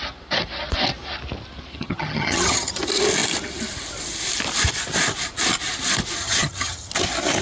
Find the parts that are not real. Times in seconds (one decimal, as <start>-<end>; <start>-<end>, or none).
1.7-2.8; 6.2-6.9